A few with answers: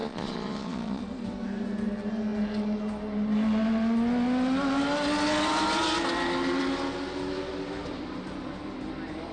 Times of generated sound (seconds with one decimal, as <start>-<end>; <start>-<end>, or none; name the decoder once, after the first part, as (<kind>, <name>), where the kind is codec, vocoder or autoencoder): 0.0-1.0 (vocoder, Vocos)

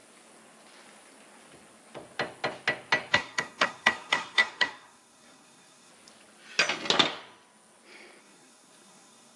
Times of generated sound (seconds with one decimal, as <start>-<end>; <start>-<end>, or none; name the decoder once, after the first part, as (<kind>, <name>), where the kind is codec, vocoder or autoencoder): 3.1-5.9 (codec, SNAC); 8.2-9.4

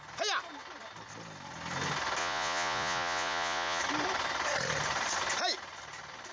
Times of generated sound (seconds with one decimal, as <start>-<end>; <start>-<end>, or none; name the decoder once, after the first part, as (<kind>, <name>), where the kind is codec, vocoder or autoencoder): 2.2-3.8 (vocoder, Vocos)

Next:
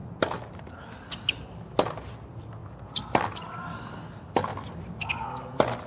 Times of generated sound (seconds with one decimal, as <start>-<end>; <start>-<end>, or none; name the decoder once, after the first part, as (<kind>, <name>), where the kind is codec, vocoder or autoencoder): none

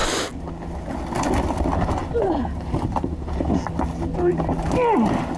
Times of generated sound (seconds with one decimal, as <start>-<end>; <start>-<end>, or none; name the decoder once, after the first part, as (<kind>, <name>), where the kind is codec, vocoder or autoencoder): 2.0-3.4 (vocoder, BigVGAN v2)